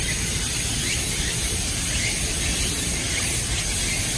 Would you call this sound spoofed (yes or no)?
no